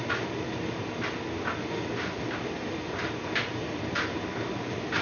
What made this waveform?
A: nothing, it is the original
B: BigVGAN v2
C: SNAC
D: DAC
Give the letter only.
A